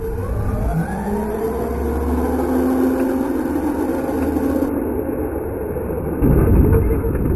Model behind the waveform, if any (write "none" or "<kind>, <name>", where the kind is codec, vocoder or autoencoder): none